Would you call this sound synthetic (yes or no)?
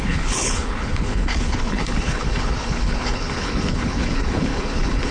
yes